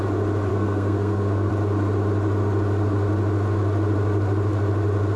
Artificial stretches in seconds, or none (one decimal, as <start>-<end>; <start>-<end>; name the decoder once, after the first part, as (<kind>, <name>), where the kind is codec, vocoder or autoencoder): 0.5-1.5 (codec, SNAC)